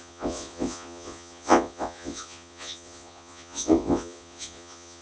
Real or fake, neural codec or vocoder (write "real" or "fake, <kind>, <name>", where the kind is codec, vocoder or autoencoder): fake, vocoder, Vocos